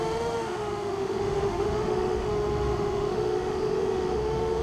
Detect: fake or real fake